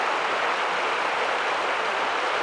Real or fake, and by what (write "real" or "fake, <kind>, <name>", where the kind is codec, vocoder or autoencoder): real